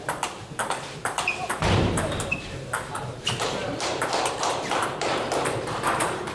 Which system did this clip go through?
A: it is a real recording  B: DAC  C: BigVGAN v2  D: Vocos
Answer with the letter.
C